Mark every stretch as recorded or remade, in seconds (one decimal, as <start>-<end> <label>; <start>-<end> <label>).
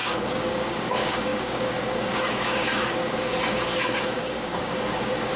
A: 0.0-5.4 remade